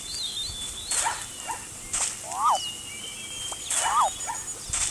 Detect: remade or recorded recorded